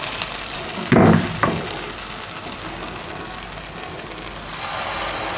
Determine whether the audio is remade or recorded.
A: recorded